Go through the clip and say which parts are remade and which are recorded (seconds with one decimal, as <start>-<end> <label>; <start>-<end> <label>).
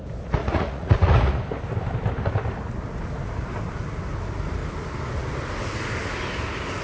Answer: 0.0-0.4 recorded; 0.4-1.4 remade; 1.4-6.8 recorded